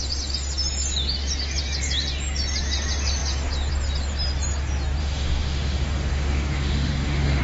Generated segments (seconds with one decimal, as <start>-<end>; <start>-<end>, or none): 5.0-7.4